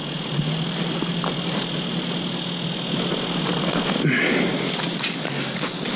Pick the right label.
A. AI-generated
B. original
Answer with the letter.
B